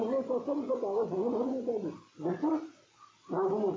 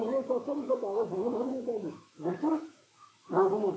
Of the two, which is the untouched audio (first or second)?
first